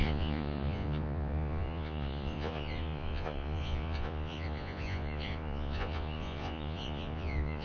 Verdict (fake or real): fake